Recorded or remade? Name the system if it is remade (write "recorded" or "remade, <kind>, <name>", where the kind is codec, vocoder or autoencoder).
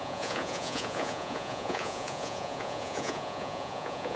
remade, vocoder, Vocos